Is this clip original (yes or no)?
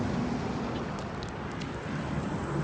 yes